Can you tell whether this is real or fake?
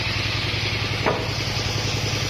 real